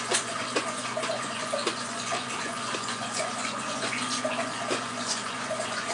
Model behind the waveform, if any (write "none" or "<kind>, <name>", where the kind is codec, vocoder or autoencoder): vocoder, Vocos